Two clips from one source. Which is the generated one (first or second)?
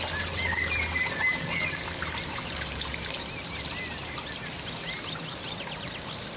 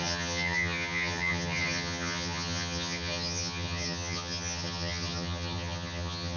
second